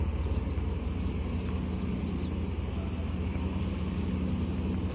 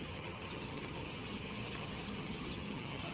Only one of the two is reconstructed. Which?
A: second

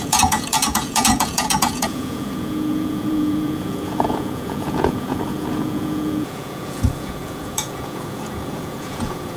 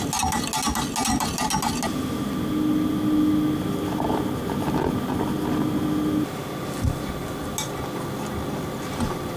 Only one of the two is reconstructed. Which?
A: first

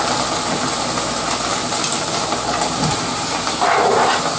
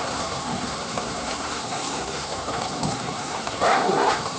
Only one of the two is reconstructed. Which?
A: second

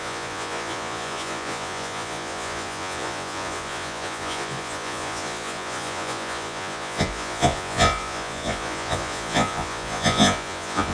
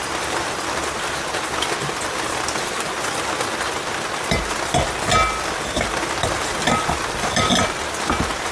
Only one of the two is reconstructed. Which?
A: first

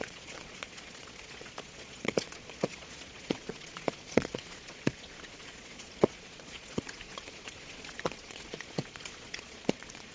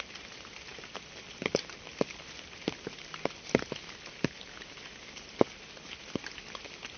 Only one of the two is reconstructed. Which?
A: first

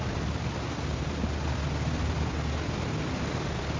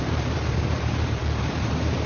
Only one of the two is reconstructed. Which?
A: second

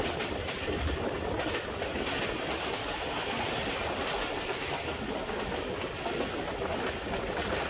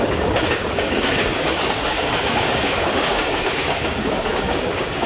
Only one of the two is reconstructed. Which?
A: second